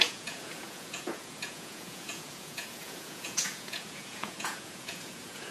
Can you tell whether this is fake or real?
fake